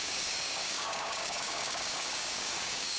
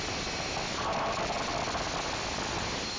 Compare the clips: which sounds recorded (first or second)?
second